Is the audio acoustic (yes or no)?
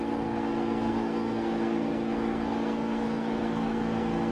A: no